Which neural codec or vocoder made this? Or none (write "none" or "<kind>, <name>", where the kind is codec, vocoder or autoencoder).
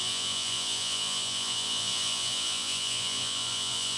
vocoder, Vocos